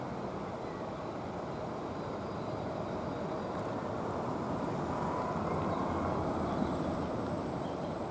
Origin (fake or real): real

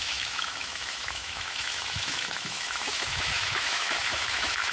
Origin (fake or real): fake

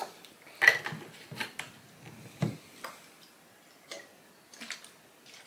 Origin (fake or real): real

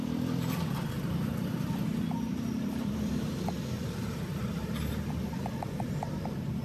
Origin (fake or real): fake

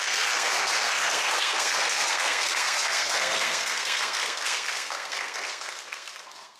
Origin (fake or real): fake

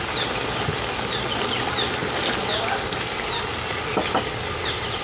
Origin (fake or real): real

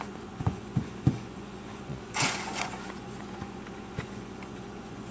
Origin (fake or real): fake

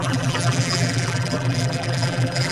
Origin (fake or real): fake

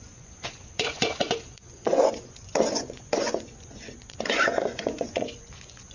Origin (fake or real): fake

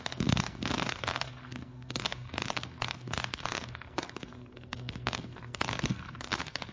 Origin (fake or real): fake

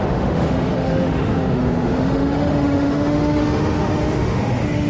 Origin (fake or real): fake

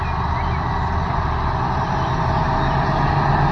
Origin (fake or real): real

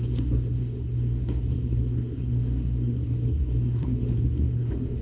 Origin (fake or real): fake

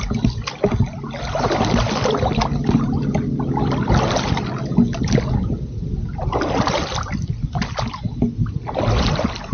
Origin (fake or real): real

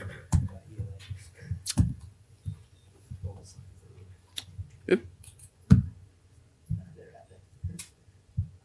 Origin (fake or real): fake